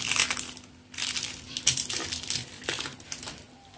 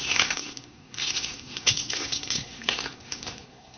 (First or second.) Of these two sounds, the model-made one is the second